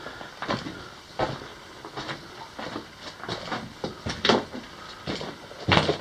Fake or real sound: real